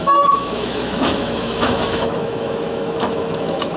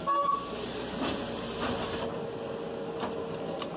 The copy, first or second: first